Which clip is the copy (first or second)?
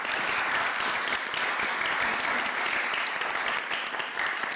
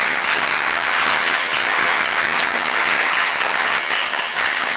second